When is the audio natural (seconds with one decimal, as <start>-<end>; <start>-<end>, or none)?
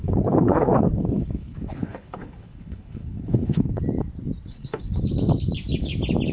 3.8-4.5; 5.0-6.3